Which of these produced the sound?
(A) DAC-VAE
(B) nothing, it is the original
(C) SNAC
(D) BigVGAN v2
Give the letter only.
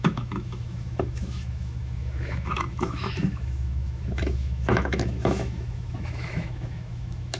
A